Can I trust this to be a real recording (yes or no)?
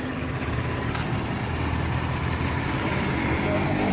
no